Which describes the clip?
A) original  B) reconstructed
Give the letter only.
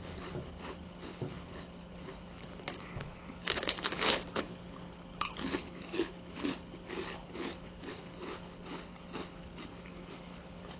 B